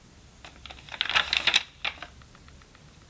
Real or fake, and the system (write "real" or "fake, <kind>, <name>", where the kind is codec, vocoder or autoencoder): real